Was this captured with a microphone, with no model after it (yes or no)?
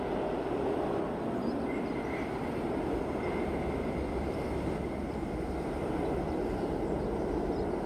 yes